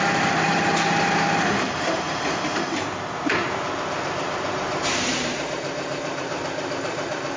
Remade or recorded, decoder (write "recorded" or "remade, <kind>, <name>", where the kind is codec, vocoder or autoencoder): remade, vocoder, BigVGAN v2